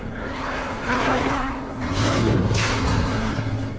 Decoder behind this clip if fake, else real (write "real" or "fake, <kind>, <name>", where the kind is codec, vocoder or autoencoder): fake, codec, SNAC